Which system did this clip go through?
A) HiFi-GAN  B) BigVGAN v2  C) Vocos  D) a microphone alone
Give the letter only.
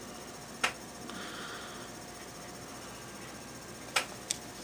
D